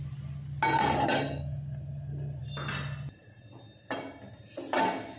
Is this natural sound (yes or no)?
yes